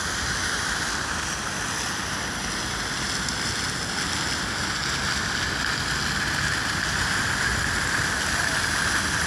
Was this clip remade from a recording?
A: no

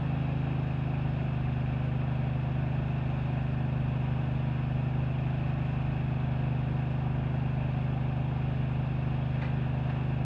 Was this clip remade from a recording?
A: no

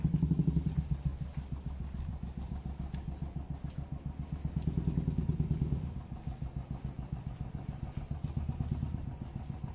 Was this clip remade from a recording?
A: no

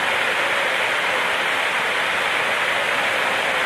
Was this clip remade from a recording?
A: no